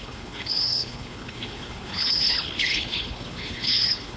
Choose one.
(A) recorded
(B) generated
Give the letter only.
B